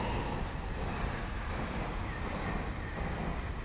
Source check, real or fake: real